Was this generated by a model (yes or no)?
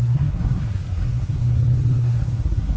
yes